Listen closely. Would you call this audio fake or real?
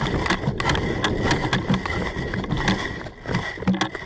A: real